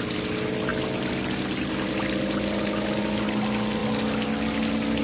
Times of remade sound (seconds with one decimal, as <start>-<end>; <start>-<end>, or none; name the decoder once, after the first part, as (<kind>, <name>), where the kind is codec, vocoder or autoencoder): none